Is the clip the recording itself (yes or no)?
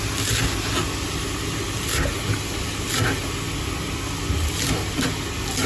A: yes